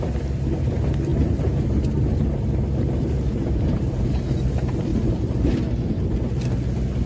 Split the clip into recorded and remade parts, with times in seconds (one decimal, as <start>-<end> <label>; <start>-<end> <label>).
0.0-1.1 recorded; 1.1-1.8 remade; 1.8-3.3 recorded; 3.3-4.3 remade; 4.3-4.9 recorded; 4.9-5.5 remade; 5.5-7.1 recorded